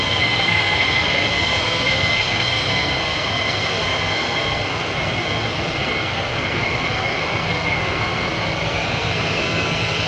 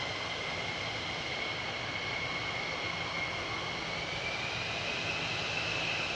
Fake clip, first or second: first